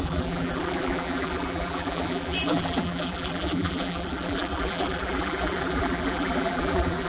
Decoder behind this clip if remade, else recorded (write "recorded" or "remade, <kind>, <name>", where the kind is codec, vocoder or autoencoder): remade, vocoder, BigVGAN v2